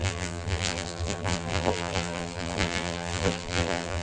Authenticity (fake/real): fake